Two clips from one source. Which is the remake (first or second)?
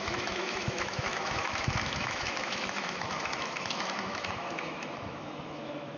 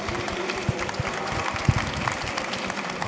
first